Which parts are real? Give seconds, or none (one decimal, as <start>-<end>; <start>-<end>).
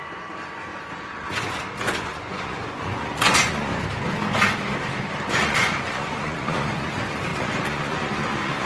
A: 3.7-5.3